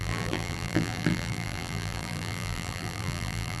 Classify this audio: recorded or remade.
remade